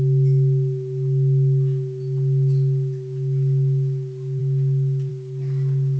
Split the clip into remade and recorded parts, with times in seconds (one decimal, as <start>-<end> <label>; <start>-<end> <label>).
0.0-6.0 recorded